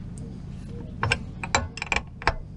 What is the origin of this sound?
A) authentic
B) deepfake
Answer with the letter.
A